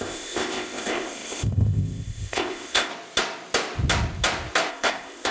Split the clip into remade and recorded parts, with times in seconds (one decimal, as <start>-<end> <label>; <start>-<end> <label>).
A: 0.0-2.9 remade; 2.9-4.7 recorded; 4.7-5.3 remade